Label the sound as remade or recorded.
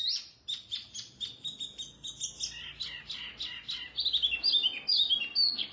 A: recorded